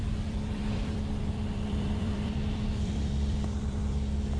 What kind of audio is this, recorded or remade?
remade